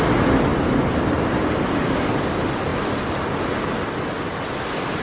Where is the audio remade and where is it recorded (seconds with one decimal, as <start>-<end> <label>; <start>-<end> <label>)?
0.0-5.0 recorded